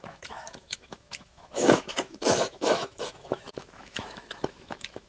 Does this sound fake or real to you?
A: fake